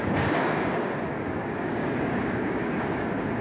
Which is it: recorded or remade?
remade